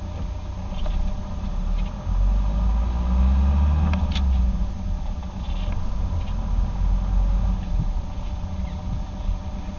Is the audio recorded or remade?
recorded